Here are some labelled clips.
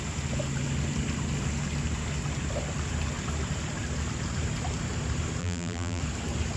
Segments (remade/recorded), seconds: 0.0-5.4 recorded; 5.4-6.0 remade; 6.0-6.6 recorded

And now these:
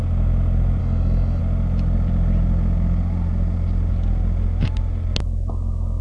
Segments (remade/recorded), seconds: 0.0-0.8 recorded; 0.8-1.4 remade; 1.4-6.0 recorded

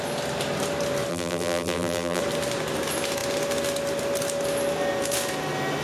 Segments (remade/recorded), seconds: 0.0-1.1 recorded; 1.1-2.2 remade; 2.2-5.8 recorded

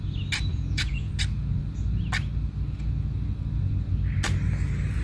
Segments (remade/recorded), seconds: 0.0-0.5 recorded; 0.5-1.1 remade; 1.1-5.0 recorded

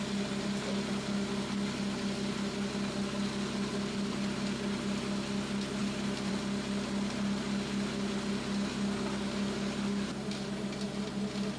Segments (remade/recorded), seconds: 0.0-11.6 recorded

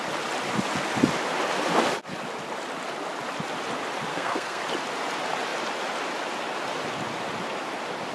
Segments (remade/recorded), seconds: 0.0-4.1 recorded; 4.1-4.6 remade; 4.6-8.1 recorded